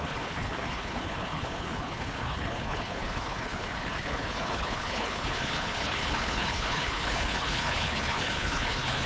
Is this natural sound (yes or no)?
no